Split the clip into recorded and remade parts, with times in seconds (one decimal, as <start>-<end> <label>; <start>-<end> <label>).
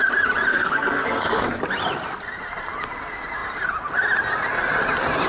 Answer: 0.0-0.5 recorded; 0.5-1.6 remade; 1.6-5.3 recorded